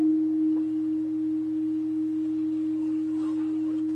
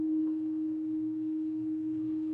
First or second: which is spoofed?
second